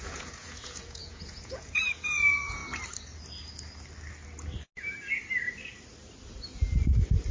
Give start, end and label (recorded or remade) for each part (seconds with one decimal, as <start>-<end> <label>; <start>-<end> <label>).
0.0-2.6 remade; 2.6-7.3 recorded